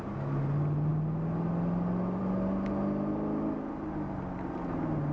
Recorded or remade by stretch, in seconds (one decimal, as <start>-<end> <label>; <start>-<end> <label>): 0.0-5.1 recorded